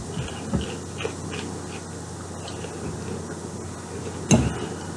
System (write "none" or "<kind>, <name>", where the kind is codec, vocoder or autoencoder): none